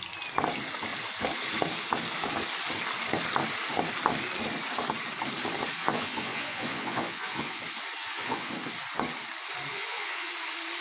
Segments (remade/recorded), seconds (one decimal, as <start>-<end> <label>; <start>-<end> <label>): 0.0-5.8 recorded; 5.8-7.6 remade; 7.6-8.0 recorded; 8.0-8.5 remade; 8.5-9.7 recorded; 9.7-10.3 remade; 10.3-10.8 recorded